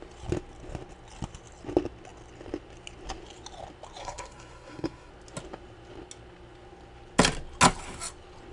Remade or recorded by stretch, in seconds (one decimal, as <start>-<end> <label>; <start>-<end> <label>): 0.0-4.0 recorded; 4.0-5.1 remade; 5.1-8.5 recorded